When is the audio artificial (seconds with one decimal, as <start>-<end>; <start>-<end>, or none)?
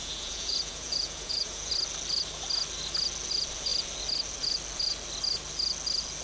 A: 0.0-1.7